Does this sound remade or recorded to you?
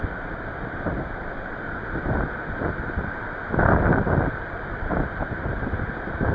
recorded